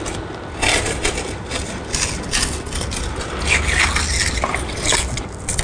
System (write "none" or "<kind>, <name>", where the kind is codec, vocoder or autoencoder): none